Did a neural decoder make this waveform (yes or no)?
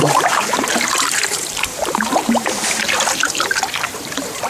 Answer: yes